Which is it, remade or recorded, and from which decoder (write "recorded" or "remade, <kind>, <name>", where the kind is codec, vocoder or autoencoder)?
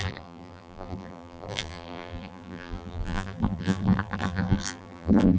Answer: remade, vocoder, BigVGAN v2